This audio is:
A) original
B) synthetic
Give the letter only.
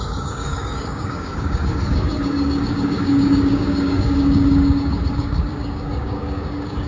B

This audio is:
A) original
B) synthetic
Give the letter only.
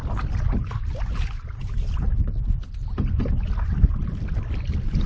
A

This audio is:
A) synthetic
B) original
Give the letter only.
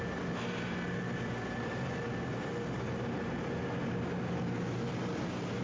B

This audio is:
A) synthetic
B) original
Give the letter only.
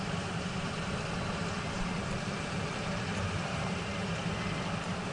A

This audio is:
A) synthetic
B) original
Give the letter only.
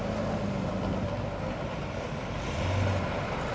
B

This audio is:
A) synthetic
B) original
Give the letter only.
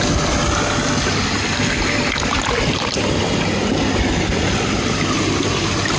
B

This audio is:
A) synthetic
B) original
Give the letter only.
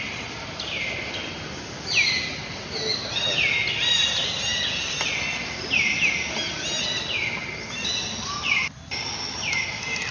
B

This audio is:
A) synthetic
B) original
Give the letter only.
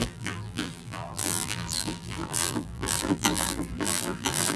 A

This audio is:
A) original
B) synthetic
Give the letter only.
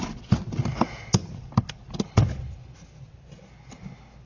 B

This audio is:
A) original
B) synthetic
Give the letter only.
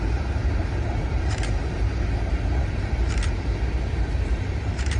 B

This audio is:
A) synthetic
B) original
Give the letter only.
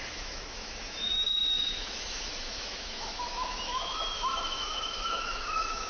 A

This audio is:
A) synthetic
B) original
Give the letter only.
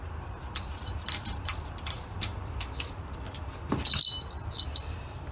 A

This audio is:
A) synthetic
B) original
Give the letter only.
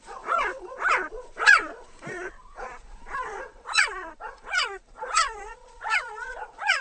A